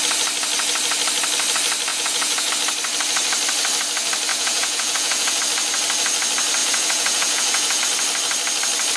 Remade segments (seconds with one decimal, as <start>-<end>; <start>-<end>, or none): 1.9-2.5; 4.3-5.4; 6.6-7.8